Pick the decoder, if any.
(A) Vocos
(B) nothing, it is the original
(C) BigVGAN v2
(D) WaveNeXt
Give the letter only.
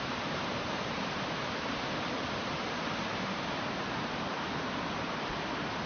C